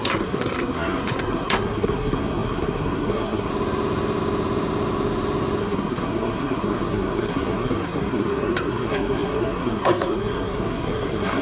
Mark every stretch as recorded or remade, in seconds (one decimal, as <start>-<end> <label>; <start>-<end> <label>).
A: 0.0-3.5 remade; 3.5-5.6 recorded; 5.6-11.4 remade